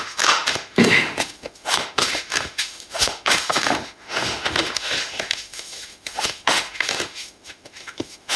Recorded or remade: remade